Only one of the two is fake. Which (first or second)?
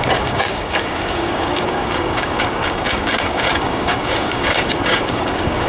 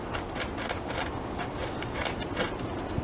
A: first